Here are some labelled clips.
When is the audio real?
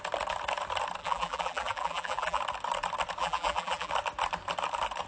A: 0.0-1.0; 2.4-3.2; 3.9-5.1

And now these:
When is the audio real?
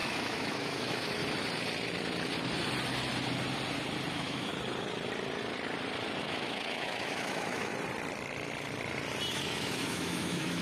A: 1.2-4.1; 4.5-6.2; 7.7-9.3